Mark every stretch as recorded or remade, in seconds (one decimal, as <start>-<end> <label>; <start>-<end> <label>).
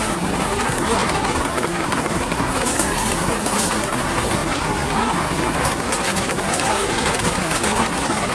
0.0-8.3 remade